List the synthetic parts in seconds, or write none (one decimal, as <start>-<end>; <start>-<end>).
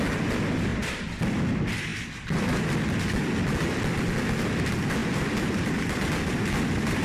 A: 0.7-1.2; 5.0-5.7